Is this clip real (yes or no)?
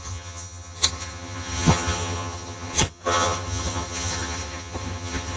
no